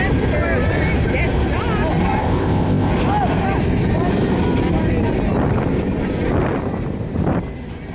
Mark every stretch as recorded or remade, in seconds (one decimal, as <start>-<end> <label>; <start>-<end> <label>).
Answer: 0.0-2.2 recorded; 2.2-2.9 remade; 2.9-7.9 recorded